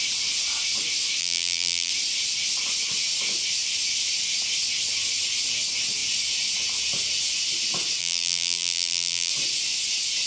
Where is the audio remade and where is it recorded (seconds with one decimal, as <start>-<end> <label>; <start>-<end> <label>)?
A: 0.0-1.2 recorded; 1.2-1.9 remade; 1.9-8.0 recorded; 8.0-9.3 remade; 9.3-10.3 recorded